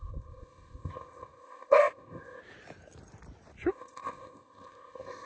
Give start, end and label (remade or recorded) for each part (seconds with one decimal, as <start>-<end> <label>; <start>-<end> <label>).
0.0-2.4 remade; 2.4-3.7 recorded; 3.7-5.3 remade